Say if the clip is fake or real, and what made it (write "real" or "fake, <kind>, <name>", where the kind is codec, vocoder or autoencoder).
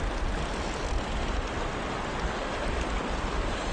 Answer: real